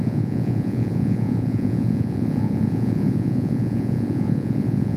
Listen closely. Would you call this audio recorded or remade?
remade